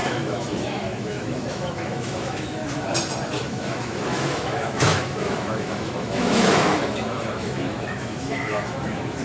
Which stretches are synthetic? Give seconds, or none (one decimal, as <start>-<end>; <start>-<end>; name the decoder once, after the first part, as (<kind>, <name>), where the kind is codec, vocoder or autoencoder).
0.0-2.6 (autoencoder, DAC-VAE); 3.5-9.2